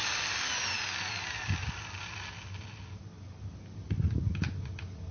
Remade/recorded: recorded